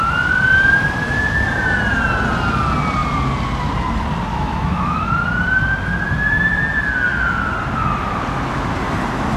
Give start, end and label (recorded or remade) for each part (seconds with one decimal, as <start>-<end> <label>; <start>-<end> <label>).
0.0-4.3 recorded; 4.3-5.1 remade; 5.1-9.4 recorded